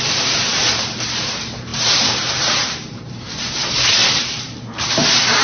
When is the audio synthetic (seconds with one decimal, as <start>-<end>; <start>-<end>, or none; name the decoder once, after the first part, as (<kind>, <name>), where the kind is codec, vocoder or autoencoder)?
0.0-5.4 (vocoder, BigVGAN v2)